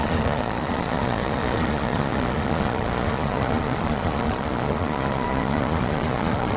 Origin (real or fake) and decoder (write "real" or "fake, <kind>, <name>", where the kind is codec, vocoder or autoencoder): fake, vocoder, Vocos